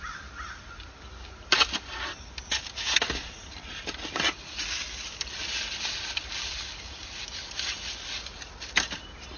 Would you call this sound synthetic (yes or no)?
no